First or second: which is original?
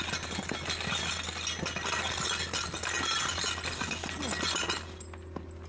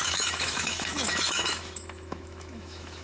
first